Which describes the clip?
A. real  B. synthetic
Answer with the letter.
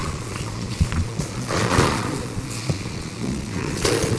B